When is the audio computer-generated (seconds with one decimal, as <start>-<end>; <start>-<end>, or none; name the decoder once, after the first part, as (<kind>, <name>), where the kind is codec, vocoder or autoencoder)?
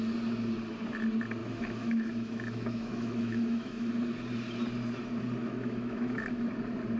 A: 1.4-3.9 (autoencoder, DAC-VAE); 5.4-6.5